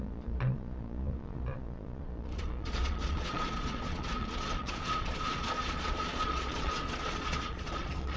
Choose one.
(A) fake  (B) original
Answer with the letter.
A